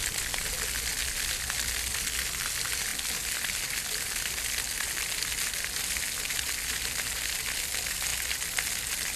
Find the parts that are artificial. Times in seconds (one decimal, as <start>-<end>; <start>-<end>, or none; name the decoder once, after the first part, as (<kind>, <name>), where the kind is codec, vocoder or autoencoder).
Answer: none

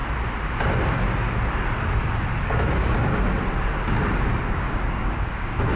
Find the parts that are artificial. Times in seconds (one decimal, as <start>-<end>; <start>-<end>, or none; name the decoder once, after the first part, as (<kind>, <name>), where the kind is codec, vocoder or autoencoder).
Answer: 2.3-3.1 (codec, DAC); 4.4-5.8

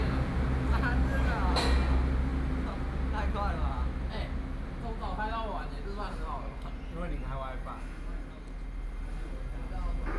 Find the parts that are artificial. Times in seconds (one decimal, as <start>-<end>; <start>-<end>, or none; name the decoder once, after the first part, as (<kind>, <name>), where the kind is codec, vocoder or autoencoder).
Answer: none

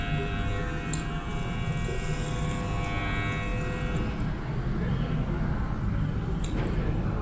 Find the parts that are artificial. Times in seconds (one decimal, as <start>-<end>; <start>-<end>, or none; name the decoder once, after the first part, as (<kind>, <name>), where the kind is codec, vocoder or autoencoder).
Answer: none

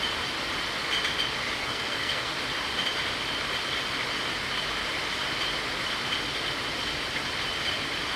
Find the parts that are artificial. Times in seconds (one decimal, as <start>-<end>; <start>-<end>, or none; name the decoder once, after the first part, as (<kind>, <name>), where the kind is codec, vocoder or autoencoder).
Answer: 1.6-2.3 (codec, SNAC)

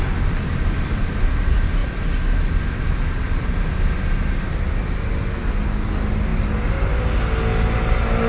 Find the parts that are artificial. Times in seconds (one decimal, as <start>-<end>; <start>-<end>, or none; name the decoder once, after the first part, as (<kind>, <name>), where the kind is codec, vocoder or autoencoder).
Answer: none

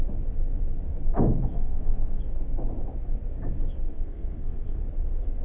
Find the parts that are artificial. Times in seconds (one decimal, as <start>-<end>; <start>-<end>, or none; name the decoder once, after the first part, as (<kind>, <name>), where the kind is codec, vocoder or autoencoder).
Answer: 1.5-2.2 (codec, SNAC); 3.9-4.8